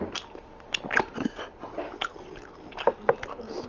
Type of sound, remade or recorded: recorded